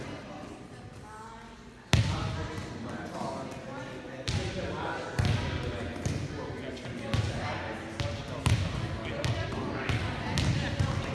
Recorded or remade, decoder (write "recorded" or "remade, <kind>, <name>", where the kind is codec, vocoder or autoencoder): recorded